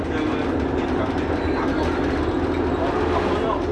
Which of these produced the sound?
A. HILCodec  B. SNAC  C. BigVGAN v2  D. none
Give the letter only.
D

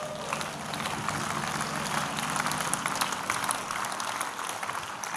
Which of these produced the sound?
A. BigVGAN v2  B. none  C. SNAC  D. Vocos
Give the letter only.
B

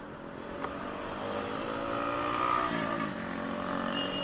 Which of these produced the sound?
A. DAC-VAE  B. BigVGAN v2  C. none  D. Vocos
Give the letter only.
C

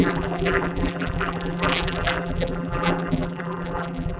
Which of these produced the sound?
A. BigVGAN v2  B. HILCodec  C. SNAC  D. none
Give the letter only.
A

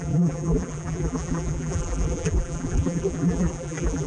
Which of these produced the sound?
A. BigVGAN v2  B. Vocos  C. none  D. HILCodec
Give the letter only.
A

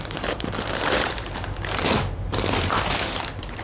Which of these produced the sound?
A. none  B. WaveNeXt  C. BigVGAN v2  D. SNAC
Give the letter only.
C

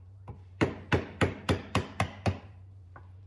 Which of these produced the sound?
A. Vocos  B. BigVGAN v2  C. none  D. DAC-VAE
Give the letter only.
B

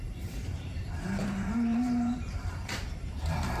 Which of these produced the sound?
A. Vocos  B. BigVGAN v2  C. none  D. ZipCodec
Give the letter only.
B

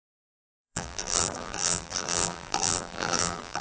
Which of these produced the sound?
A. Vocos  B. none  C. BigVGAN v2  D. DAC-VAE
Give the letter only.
C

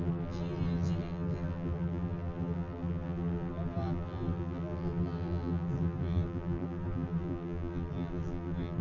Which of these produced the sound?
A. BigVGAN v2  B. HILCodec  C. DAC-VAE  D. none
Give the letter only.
A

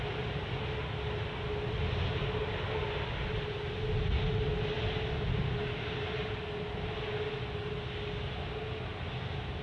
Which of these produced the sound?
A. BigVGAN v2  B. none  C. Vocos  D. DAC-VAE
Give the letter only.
B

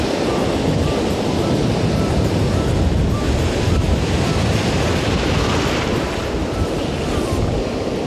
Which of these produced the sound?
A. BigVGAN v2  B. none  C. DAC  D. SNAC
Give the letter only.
B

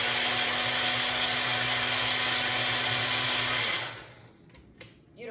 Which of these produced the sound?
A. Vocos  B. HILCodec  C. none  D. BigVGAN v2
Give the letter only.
C